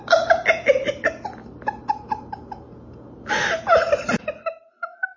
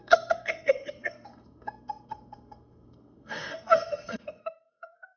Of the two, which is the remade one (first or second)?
second